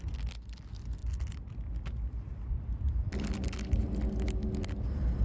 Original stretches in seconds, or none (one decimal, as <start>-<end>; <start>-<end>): 0.0-5.2